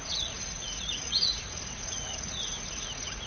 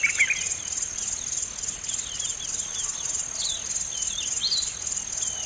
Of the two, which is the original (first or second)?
second